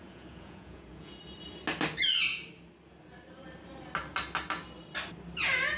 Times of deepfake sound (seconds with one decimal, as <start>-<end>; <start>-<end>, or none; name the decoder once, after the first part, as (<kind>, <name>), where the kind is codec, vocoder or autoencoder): 0.0-1.2 (vocoder, Vocos)